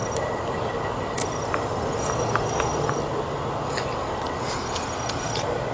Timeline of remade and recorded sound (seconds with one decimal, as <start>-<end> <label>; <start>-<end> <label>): 0.0-5.7 recorded